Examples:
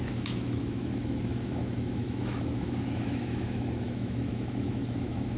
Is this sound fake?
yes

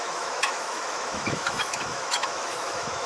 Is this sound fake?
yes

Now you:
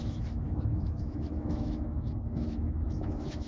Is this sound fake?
yes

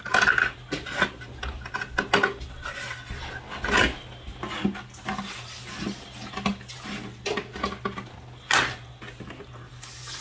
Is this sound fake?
no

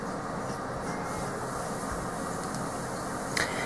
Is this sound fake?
no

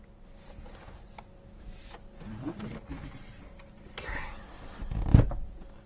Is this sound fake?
no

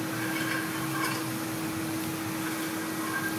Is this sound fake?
no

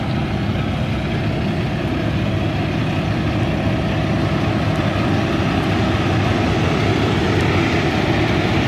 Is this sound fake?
no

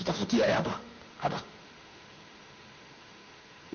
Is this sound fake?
yes